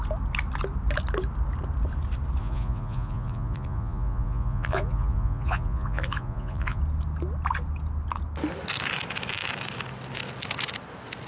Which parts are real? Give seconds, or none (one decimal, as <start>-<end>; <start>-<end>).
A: 0.0-2.4; 6.8-11.3